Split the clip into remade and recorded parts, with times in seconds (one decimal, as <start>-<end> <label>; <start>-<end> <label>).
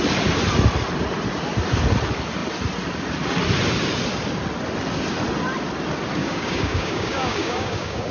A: 0.0-6.2 recorded; 6.2-8.1 remade